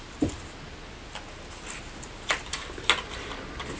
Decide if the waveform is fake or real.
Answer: real